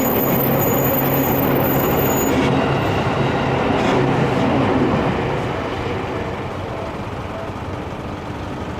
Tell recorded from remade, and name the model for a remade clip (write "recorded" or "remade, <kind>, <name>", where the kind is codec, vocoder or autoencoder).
recorded